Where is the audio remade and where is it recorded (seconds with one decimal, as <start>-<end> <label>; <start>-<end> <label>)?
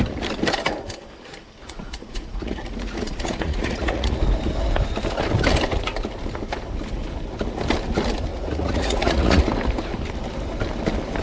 0.0-1.6 recorded; 1.6-4.2 remade; 4.2-8.3 recorded; 8.3-9.4 remade; 9.4-11.2 recorded